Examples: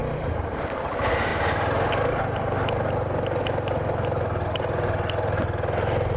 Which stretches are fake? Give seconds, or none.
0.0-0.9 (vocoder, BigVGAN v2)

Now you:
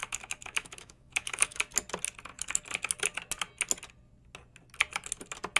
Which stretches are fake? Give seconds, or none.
0.0-1.6 (autoencoder, DAC-VAE)

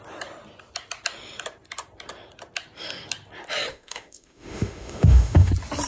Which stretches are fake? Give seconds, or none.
3.7-5.5 (autoencoder, DAC-VAE)

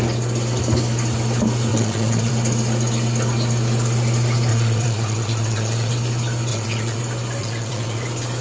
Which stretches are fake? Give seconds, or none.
1.7-2.3 (vocoder, Vocos); 4.5-5.9; 6.5-7.0; 7.4-8.0

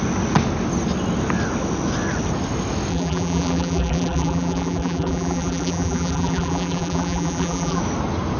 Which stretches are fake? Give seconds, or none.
2.9-7.8 (vocoder, BigVGAN v2)

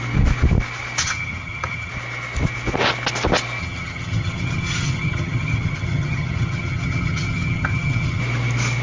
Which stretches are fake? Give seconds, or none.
1.0-1.9 (vocoder, HiFi-GAN); 3.6-8.2

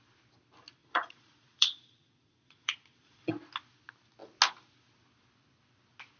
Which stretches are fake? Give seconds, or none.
0.8-3.3 (vocoder, Vocos)

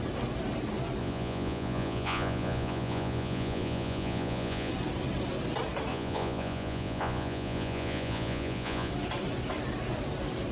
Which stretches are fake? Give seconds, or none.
1.0-4.7 (vocoder, Vocos); 5.9-8.9